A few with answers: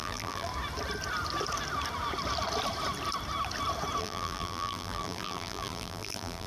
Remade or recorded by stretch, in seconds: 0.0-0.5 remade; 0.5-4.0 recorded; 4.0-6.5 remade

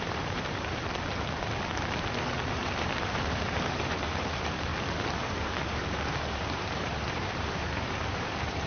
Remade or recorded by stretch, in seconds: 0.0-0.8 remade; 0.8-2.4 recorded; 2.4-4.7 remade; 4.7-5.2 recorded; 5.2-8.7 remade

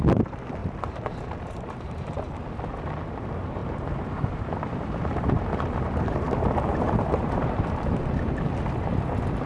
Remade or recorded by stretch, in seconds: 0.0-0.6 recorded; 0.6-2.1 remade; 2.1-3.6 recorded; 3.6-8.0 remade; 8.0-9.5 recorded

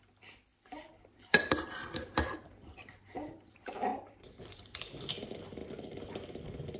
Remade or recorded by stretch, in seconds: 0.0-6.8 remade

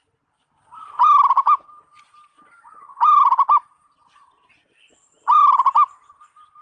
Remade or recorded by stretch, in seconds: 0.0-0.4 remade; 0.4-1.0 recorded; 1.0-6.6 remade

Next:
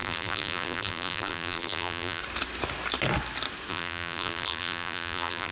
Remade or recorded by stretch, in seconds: 0.0-2.2 remade; 2.2-3.7 recorded; 3.7-5.5 remade